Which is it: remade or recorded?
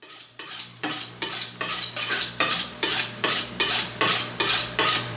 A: recorded